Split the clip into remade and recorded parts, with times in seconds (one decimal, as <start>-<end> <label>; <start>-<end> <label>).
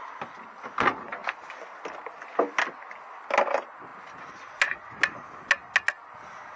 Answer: 0.0-6.6 recorded